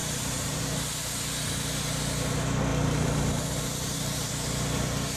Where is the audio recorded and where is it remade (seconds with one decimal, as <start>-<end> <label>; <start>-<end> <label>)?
0.0-0.6 remade; 0.6-2.7 recorded; 2.7-4.3 remade; 4.3-5.2 recorded